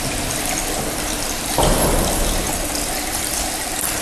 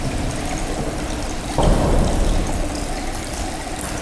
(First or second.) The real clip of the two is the first